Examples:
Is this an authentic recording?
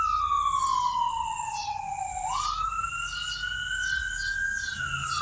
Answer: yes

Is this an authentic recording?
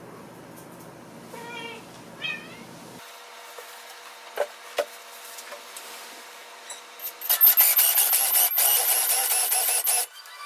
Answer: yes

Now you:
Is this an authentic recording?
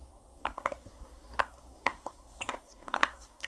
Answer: no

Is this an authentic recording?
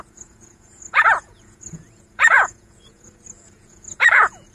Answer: no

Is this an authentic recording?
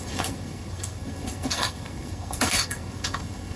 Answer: no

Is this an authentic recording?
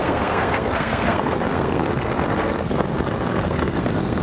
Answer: no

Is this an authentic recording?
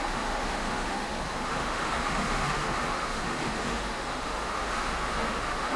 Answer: no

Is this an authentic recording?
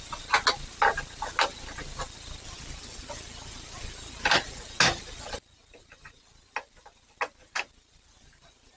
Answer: yes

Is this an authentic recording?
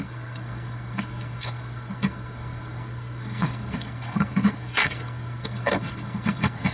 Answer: no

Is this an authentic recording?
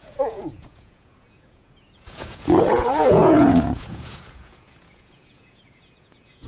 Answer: no